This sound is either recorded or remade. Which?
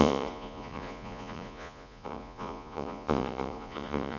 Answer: remade